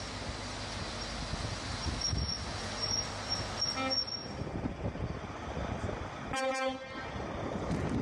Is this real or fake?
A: real